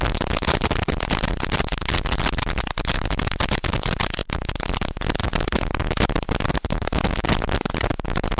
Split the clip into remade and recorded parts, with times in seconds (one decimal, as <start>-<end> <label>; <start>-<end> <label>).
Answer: 0.0-8.4 recorded